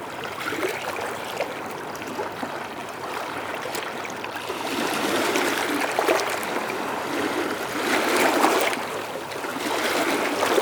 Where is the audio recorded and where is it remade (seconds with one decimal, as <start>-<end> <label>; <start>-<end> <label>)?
0.0-2.8 recorded; 2.8-5.8 remade; 5.8-10.6 recorded